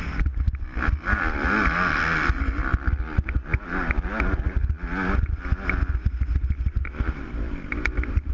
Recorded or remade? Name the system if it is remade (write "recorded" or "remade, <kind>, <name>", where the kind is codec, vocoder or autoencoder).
recorded